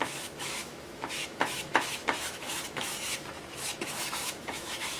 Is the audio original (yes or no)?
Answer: no